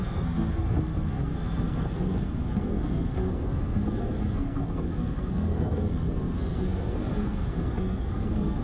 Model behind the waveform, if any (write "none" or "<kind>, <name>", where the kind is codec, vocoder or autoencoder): codec, SNAC